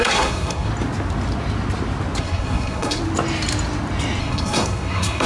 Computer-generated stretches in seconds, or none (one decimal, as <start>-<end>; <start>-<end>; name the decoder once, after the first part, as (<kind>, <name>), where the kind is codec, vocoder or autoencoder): 0.0-0.7 (codec, SNAC); 2.2-3.0; 4.2-5.3